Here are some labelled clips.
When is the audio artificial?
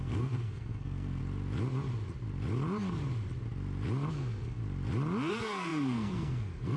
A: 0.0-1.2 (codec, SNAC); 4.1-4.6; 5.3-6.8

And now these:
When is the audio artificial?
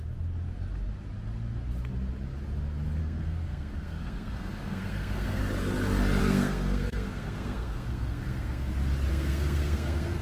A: 3.0-5.4 (codec, SNAC); 6.2-8.7; 9.1-10.2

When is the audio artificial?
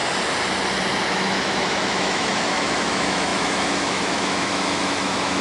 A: 1.1-5.4 (autoencoder, DAC-VAE)